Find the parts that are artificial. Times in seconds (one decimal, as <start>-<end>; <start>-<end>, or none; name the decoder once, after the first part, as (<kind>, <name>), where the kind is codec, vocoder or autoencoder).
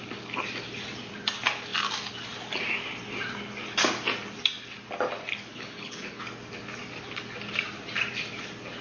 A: 5.5-6.2 (codec, HILCodec)